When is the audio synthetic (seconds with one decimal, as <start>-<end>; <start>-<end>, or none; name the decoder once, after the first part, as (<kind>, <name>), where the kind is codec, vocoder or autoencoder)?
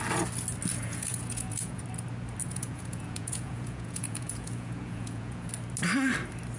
0.7-1.8 (vocoder, Vocos); 2.4-5.5